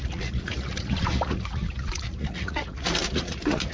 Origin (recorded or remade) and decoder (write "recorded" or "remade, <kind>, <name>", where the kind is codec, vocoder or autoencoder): remade, vocoder, Vocos